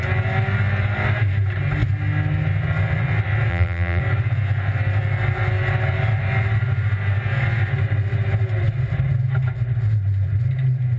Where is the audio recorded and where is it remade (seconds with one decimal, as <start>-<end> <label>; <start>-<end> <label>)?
0.0-3.5 recorded; 3.5-4.0 remade; 4.0-11.0 recorded